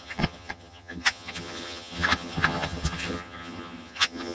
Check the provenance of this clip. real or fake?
fake